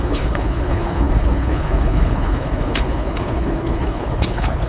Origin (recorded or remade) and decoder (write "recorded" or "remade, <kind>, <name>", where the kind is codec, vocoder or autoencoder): remade, codec, HILCodec